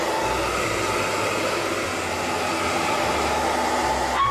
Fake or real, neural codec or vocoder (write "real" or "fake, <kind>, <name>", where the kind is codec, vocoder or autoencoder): real